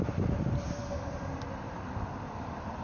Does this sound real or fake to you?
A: fake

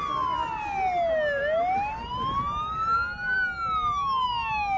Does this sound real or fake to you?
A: real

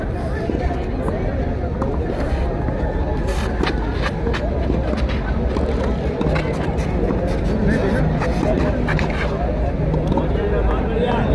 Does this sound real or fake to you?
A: real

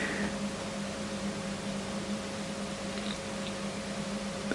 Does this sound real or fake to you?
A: real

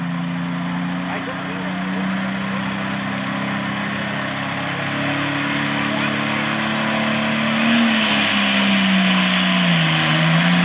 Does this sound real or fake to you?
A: real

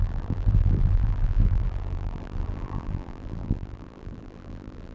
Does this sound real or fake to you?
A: fake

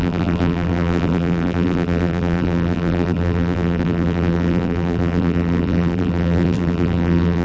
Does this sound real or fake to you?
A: fake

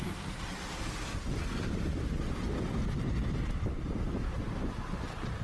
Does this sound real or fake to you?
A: real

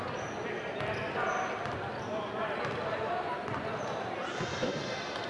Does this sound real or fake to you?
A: real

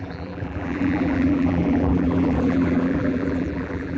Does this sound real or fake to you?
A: fake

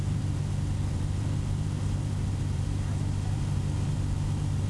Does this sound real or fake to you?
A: fake